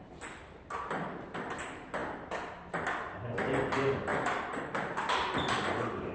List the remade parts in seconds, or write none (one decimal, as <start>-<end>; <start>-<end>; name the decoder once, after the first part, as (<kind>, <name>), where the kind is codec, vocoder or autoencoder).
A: 4.1-6.1 (vocoder, BigVGAN v2)